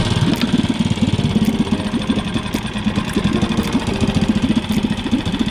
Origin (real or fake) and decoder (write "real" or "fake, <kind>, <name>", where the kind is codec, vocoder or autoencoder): real